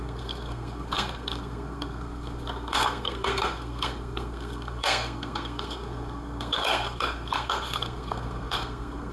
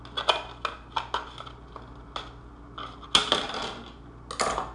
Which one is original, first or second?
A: second